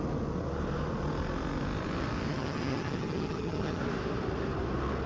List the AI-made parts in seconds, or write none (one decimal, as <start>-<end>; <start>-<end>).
2.3-3.8